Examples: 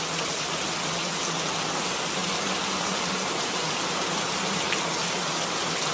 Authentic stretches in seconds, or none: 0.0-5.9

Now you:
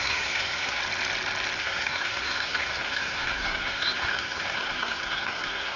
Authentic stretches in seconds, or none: 0.8-1.6

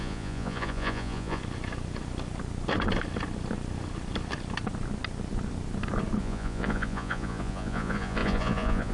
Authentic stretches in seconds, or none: 1.4-6.2

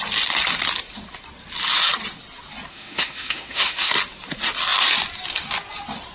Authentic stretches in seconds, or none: 0.0-2.7; 3.9-6.1